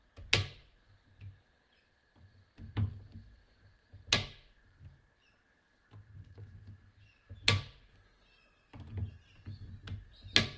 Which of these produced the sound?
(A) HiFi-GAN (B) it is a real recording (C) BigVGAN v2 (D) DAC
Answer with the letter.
B